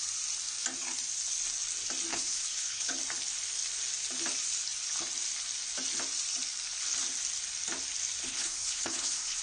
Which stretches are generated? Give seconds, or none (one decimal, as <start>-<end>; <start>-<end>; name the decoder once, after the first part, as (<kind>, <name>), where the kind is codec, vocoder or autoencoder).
2.1-2.9 (codec, HILCodec); 8.2-9.4